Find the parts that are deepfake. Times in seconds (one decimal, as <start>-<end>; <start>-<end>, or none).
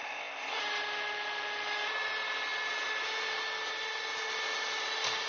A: 0.0-0.6